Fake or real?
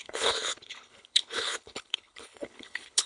fake